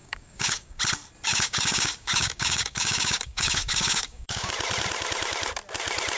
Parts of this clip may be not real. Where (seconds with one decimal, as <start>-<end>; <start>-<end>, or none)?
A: 0.0-0.8; 1.3-4.5